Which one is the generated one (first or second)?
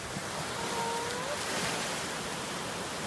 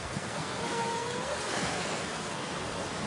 second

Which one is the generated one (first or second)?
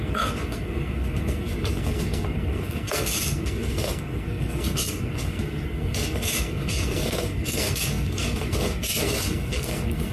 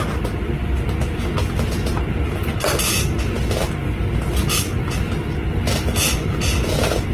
first